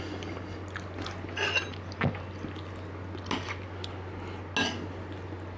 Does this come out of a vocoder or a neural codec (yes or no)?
no